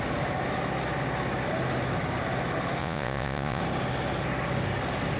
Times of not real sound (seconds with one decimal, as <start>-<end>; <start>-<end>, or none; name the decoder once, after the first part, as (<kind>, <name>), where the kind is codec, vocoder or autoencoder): 2.8-3.6 (vocoder, Vocos)